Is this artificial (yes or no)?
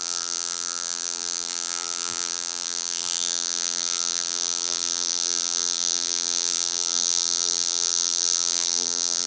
yes